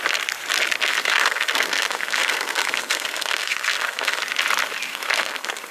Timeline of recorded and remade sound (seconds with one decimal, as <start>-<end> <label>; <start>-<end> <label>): 0.0-0.8 recorded; 0.8-4.2 remade; 4.2-4.9 recorded; 4.9-5.7 remade